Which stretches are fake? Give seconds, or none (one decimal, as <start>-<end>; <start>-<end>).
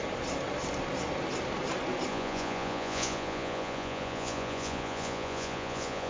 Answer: 2.1-6.1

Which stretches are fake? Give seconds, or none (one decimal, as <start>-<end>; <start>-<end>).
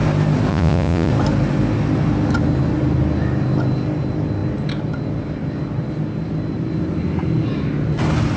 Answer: 0.5-1.1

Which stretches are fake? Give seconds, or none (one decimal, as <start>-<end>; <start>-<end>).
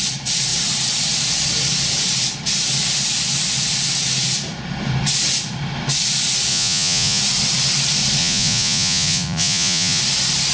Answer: 6.5-7.2; 8.2-10.0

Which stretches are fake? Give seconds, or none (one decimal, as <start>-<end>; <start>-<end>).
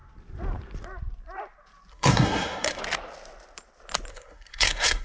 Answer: 1.9-2.8; 4.1-5.0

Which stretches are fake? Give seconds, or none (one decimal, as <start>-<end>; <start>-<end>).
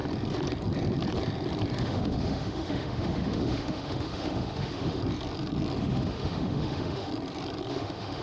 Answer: 1.8-5.0; 5.8-7.1; 7.7-8.2